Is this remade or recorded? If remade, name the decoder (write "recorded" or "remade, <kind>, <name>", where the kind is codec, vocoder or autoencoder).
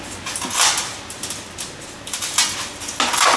recorded